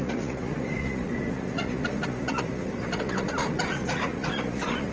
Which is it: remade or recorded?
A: remade